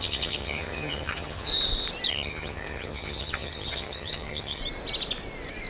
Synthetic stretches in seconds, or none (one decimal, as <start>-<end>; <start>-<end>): 0.0-1.5; 2.1-4.6